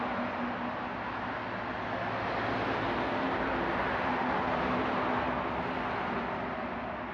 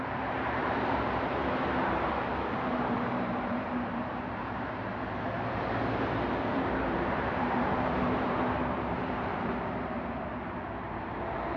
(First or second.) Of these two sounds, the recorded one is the first